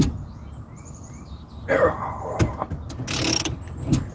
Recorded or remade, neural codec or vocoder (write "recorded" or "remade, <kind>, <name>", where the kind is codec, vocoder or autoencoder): recorded